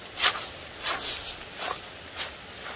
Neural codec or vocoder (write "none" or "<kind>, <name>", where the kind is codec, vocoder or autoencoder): none